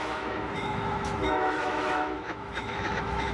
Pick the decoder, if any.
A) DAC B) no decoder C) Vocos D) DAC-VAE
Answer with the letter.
D